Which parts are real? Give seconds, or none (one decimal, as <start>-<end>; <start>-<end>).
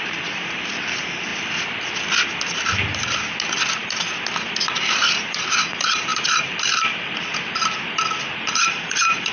1.3-4.8